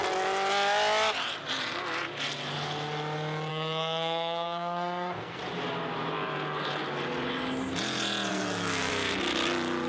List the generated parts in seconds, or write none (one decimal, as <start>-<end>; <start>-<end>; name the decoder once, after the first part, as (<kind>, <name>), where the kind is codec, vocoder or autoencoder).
3.5-5.4 (codec, SNAC); 8.3-8.9